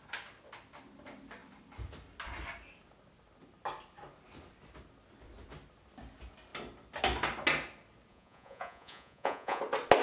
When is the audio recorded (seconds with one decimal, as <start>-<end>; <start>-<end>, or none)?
0.0-8.1; 9.6-10.0